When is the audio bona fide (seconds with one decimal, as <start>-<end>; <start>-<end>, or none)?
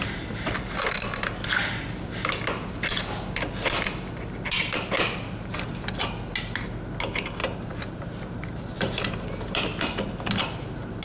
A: 0.0-7.4; 9.1-11.0